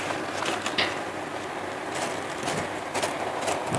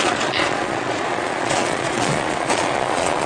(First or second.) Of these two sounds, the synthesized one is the second